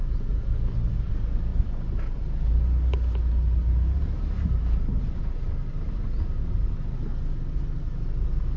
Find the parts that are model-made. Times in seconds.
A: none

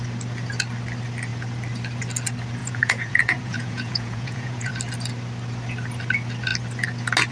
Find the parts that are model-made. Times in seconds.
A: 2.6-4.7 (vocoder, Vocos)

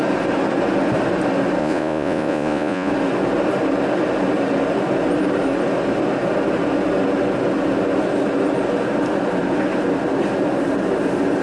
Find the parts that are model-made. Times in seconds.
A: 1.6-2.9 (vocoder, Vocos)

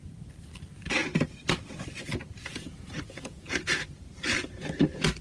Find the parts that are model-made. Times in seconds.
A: 2.5-3.7 (vocoder, Vocos)